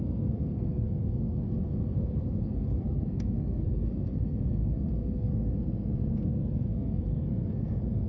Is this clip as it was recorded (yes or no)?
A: no